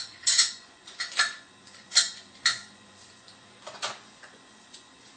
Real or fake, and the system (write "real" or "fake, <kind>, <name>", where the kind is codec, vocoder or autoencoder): fake, vocoder, Vocos